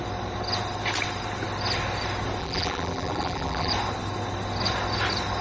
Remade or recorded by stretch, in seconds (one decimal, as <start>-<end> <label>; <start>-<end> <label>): 0.0-2.4 recorded; 2.4-3.7 remade; 3.7-5.4 recorded